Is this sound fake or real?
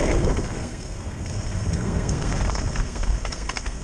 fake